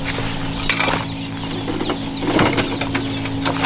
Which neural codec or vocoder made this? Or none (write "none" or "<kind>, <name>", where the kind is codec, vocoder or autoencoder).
none